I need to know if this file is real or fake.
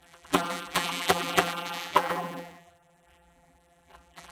fake